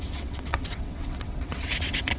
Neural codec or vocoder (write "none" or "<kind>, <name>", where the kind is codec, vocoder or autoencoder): vocoder, WaveNeXt